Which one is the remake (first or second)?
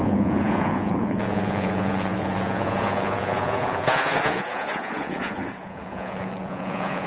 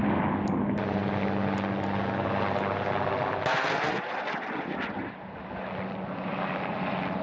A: first